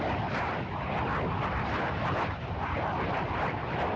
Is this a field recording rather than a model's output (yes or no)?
no